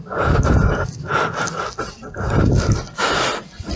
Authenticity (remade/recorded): recorded